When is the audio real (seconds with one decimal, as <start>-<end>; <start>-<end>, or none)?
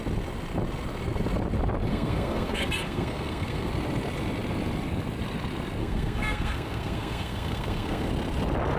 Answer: 0.0-1.9; 3.7-5.8; 8.1-8.8